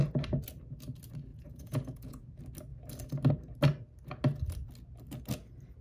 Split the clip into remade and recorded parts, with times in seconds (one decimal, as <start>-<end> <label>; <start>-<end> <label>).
0.0-1.3 recorded; 1.3-2.3 remade; 2.3-5.8 recorded